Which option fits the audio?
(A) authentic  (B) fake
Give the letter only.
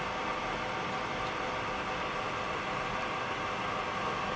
A